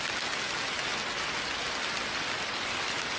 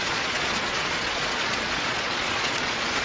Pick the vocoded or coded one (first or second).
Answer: second